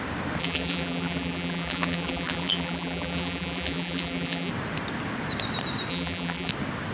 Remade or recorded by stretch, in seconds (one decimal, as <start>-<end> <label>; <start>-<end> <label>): 0.0-0.4 recorded; 0.4-4.5 remade; 4.5-5.9 recorded; 5.9-6.5 remade; 6.5-6.9 recorded